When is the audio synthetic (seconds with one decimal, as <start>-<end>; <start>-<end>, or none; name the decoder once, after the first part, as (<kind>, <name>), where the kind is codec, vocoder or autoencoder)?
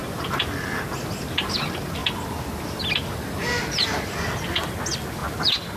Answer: none